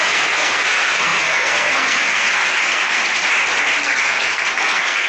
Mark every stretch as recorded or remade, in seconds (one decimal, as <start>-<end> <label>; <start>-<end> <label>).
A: 0.0-3.0 remade; 3.0-3.8 recorded; 3.8-5.1 remade